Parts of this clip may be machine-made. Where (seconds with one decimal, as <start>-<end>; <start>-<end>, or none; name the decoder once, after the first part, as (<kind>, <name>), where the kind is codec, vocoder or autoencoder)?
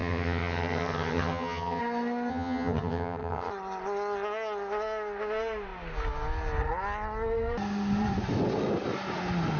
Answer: 0.0-1.8 (vocoder, HiFi-GAN); 2.3-3.5